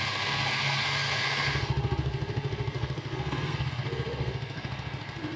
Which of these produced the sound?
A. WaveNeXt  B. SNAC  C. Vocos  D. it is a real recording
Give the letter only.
B